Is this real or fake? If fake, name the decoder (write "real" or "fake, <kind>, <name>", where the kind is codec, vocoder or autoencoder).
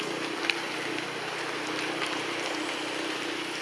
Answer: real